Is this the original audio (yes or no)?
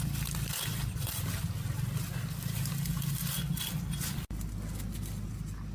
yes